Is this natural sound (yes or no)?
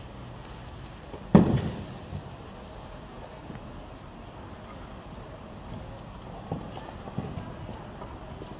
yes